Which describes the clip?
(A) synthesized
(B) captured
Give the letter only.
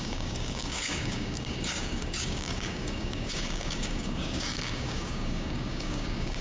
A